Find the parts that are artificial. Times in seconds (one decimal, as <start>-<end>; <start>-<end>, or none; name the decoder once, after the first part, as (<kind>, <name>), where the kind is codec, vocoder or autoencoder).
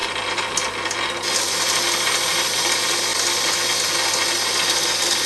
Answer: none